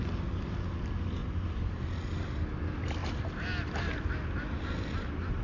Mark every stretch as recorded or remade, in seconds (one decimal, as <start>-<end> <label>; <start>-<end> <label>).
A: 0.0-1.2 recorded; 1.2-1.8 remade; 1.8-5.4 recorded